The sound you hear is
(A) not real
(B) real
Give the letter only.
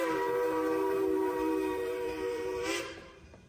A